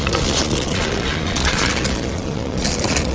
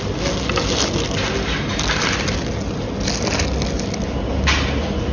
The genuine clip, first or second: second